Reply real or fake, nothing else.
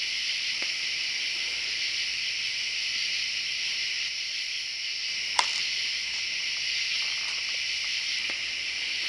fake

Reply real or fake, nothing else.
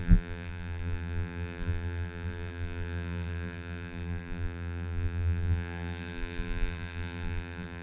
fake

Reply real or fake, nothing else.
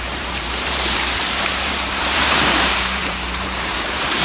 fake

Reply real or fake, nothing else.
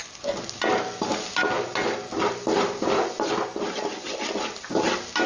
real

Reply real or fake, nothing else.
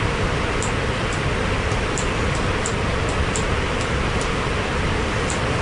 fake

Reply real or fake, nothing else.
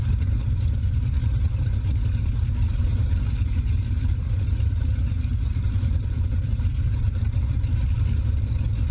fake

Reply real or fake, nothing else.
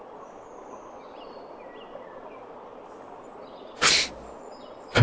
real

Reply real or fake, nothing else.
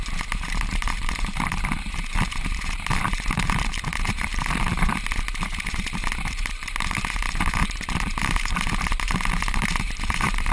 fake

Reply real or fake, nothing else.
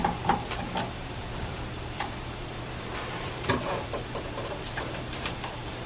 fake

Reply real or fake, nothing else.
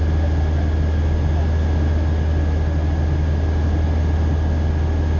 real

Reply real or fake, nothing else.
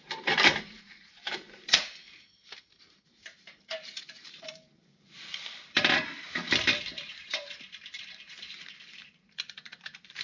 fake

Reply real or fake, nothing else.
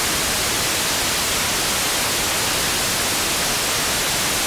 real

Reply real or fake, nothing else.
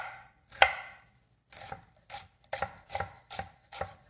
fake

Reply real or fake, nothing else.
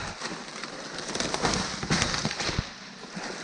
fake